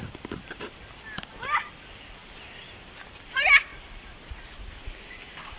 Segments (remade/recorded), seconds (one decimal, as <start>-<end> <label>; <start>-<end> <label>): 0.0-5.6 recorded